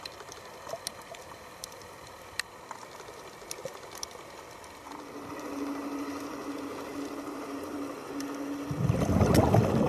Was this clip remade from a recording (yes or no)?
no